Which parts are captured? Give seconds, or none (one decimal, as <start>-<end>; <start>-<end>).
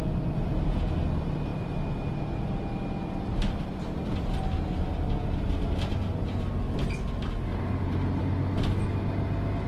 0.0-1.5; 4.4-7.5; 8.2-9.7